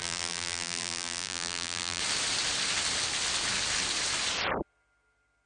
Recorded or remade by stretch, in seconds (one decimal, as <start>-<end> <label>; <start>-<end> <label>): 0.0-2.0 remade; 2.0-5.5 recorded